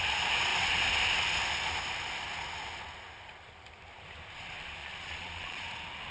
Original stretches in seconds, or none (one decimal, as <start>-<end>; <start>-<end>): 0.0-4.8; 5.6-6.1